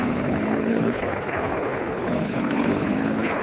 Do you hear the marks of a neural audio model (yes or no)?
yes